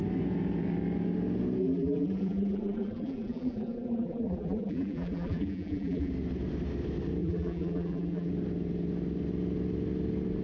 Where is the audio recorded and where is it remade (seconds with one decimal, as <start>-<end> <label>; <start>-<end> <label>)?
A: 0.0-1.6 recorded; 1.6-6.1 remade; 6.1-7.2 recorded; 7.2-8.3 remade; 8.3-10.4 recorded